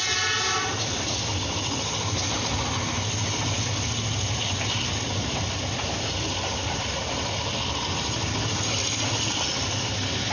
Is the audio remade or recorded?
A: recorded